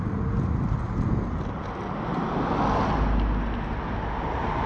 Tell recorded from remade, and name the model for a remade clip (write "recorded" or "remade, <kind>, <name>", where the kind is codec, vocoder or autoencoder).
recorded